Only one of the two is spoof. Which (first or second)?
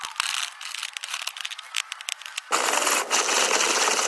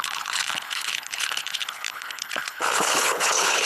second